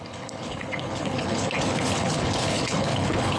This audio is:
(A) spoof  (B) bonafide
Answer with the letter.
A